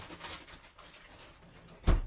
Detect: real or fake fake